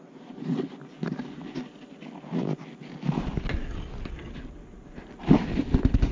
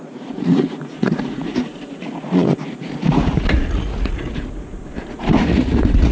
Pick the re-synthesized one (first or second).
second